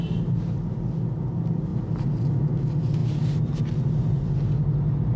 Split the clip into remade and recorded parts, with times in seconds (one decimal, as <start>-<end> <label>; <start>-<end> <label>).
0.0-5.2 recorded